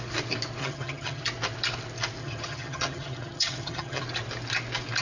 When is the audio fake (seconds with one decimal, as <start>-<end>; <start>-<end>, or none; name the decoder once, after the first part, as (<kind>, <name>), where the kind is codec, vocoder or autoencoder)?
0.6-1.2 (vocoder, HiFi-GAN); 2.2-4.0